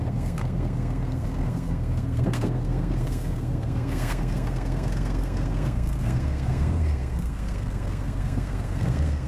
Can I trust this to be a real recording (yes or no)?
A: no